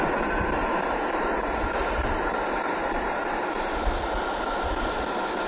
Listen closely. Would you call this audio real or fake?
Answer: real